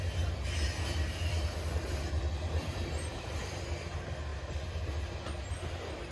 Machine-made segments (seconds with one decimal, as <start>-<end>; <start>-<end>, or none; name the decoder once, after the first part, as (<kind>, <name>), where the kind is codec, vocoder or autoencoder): 1.3-3.4 (vocoder, BigVGAN v2)